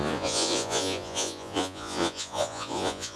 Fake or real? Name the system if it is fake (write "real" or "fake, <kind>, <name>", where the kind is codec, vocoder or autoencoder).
fake, vocoder, Vocos